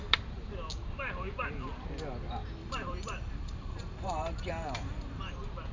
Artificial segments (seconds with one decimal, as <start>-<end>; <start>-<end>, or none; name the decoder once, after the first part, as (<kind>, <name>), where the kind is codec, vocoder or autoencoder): 2.6-5.3 (vocoder, BigVGAN v2)